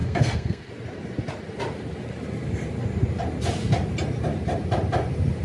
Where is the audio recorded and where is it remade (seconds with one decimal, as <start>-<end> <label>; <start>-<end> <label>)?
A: 0.0-0.7 remade; 0.7-5.4 recorded